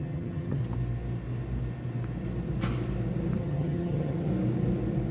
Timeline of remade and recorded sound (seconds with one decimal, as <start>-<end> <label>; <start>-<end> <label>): 0.0-0.6 remade; 0.6-3.4 recorded; 3.4-4.3 remade; 4.3-5.1 recorded